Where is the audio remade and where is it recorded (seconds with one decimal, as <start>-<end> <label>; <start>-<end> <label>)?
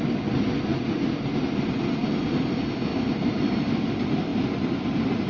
0.0-0.7 recorded; 0.7-1.3 remade; 1.3-2.9 recorded; 2.9-3.4 remade; 3.4-4.3 recorded; 4.3-5.3 remade